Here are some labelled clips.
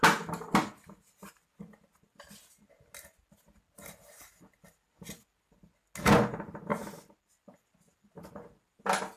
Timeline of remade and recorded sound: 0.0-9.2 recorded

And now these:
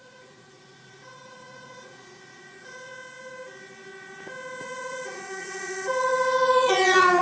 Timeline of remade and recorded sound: 0.0-2.9 remade; 2.9-4.6 recorded; 4.6-7.2 remade

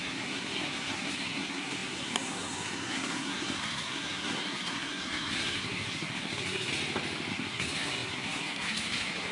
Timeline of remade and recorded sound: 0.0-6.7 remade; 6.7-7.3 recorded; 7.3-9.3 remade

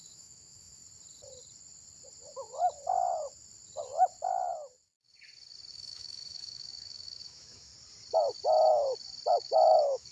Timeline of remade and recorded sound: 0.0-0.8 remade; 0.8-5.7 recorded; 5.7-7.7 remade; 7.7-9.3 recorded; 9.3-10.1 remade

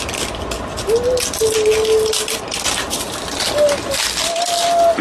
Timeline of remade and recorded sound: 0.0-5.0 recorded